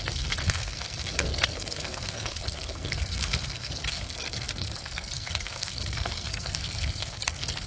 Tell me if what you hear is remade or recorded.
remade